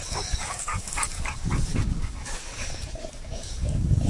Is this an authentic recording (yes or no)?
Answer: no